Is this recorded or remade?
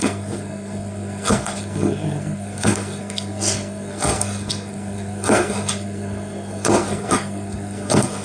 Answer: remade